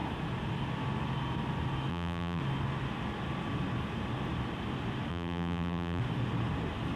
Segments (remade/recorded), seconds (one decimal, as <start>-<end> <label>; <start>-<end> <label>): 0.0-1.9 recorded; 1.9-2.4 remade; 2.4-5.1 recorded; 5.1-6.0 remade; 6.0-7.0 recorded